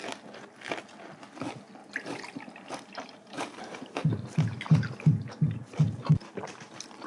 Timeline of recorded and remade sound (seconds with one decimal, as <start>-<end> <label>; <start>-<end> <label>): 0.0-1.8 recorded; 1.8-6.1 remade; 6.1-7.1 recorded